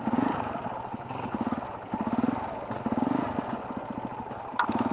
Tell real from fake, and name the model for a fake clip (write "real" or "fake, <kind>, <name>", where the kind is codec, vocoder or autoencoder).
real